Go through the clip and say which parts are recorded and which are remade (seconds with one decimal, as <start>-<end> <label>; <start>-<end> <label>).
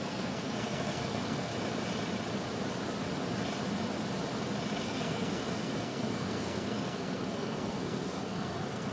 0.0-1.5 remade; 1.5-4.8 recorded; 4.8-8.9 remade